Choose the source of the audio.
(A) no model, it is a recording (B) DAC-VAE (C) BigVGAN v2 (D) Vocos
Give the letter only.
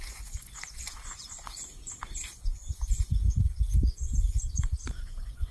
D